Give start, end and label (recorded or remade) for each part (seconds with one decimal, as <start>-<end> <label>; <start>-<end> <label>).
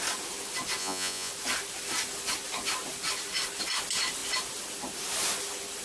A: 0.0-0.8 recorded; 0.8-1.3 remade; 1.3-5.8 recorded